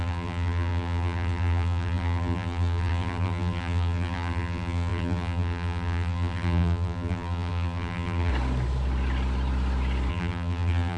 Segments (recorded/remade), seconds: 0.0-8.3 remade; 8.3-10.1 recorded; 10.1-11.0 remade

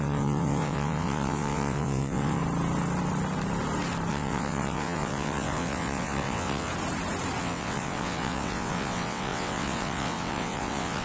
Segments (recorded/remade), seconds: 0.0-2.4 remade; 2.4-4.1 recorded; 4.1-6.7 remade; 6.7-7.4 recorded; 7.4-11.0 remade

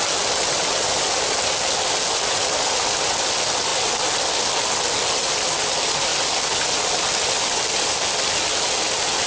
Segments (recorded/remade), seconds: 0.0-9.3 recorded

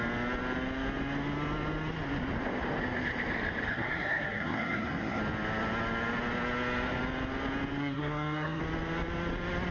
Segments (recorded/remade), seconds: 0.0-3.7 recorded; 3.7-5.2 remade; 5.2-7.8 recorded; 7.8-8.6 remade; 8.6-9.7 recorded